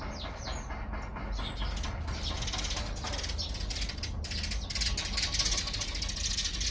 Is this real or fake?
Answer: real